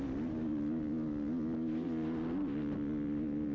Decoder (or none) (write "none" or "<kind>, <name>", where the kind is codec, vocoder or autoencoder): none